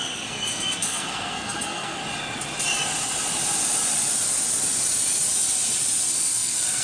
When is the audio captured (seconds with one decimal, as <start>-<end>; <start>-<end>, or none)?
2.0-6.1